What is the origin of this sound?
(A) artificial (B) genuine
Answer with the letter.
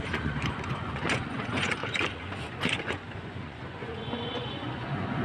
A